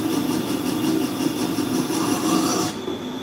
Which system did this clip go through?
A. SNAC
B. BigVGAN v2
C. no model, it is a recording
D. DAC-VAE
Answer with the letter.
C